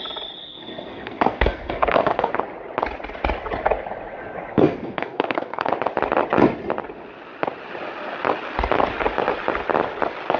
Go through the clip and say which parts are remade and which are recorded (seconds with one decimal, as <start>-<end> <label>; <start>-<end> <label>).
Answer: 0.0-0.4 recorded; 0.4-2.3 remade; 2.3-4.5 recorded; 4.5-5.7 remade; 5.7-10.4 recorded